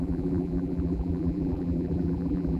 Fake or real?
fake